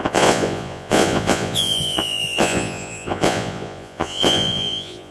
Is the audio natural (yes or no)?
no